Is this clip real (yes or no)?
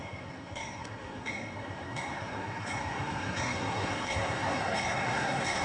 no